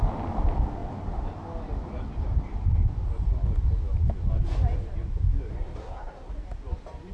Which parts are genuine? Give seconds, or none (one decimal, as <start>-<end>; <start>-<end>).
0.0-5.5; 6.3-7.1